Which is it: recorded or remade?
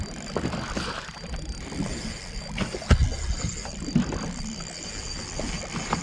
remade